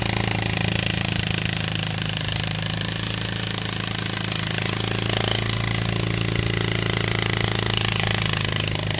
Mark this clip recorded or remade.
recorded